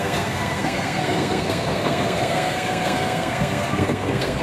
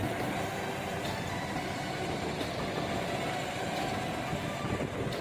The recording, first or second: second